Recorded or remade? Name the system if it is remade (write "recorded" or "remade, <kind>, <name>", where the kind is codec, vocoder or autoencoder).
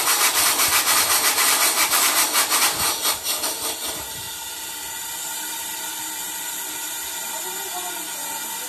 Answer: remade, vocoder, BigVGAN v2